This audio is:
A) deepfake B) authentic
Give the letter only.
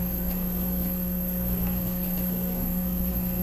A